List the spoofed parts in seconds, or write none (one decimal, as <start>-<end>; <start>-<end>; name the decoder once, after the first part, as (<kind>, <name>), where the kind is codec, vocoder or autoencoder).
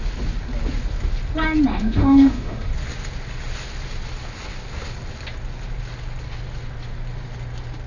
1.7-2.7 (autoencoder, DAC-VAE)